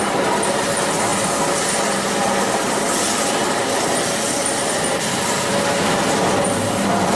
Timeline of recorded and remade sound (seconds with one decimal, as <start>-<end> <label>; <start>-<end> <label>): 0.0-7.2 recorded